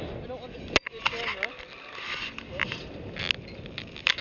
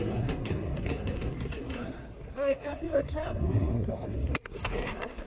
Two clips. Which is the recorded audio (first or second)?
first